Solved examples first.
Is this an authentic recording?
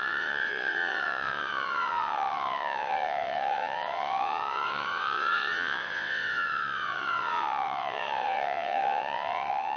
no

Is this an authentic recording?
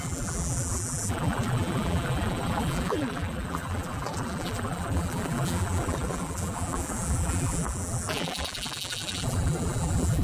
no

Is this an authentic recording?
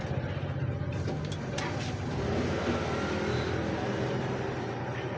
yes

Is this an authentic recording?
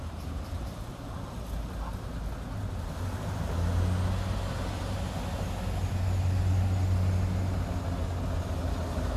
yes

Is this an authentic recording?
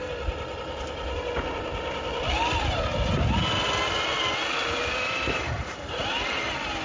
yes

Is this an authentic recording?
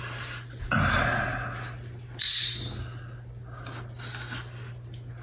yes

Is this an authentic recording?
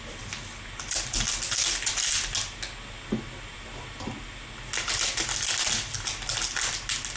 yes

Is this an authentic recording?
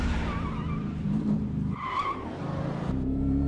no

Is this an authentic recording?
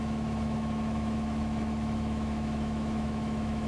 no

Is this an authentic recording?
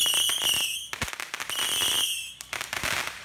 yes